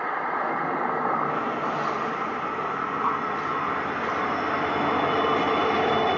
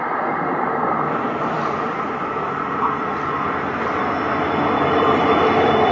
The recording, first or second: first